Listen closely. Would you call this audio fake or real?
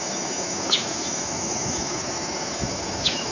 fake